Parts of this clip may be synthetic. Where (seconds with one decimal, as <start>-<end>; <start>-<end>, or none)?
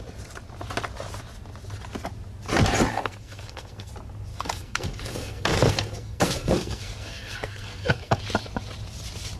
2.9-3.9; 4.3-8.2